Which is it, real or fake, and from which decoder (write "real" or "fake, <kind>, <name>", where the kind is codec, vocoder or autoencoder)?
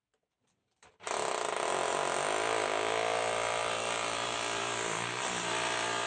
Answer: fake, vocoder, BigVGAN v2